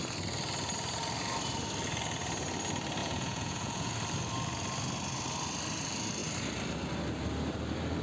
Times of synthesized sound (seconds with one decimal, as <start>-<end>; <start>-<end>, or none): 3.0-3.9